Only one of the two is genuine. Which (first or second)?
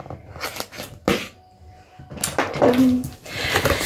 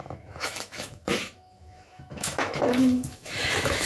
first